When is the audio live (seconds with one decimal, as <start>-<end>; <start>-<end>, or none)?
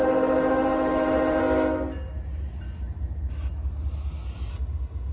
1.4-4.5